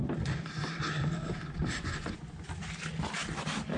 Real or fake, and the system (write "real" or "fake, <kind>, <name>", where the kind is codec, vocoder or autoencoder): real